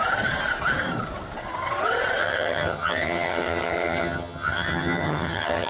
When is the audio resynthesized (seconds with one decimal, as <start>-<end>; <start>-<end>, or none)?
2.2-5.7